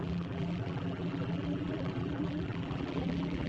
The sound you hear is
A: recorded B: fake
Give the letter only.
B